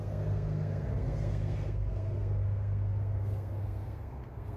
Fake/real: fake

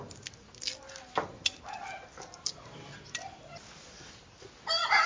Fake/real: real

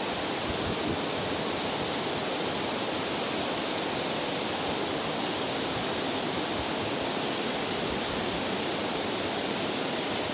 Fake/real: real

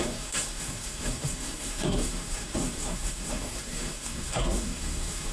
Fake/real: fake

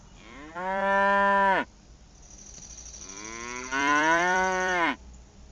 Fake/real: fake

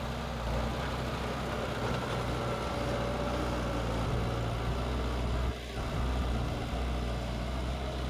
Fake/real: real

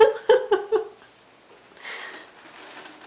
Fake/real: real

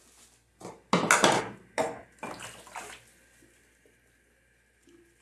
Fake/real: real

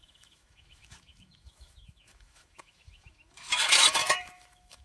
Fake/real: fake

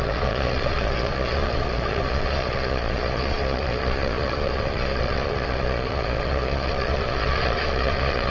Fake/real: fake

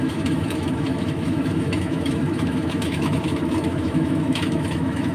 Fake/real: fake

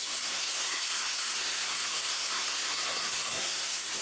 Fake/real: fake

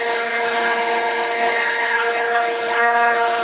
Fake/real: fake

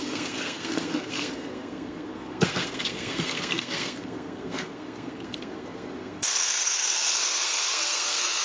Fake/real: fake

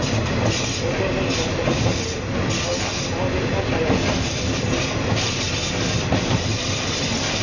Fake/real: real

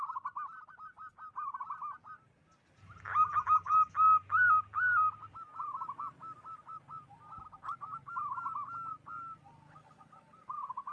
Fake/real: real